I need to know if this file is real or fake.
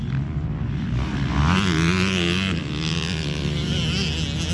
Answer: real